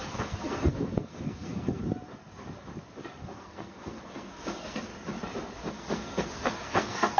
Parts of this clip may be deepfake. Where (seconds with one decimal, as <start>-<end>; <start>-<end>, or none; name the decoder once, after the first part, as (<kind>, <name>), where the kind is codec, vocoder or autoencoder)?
0.0-1.8 (codec, SNAC); 3.2-4.9; 5.7-7.2